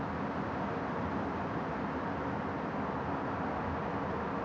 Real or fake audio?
real